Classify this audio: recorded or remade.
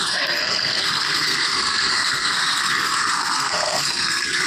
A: remade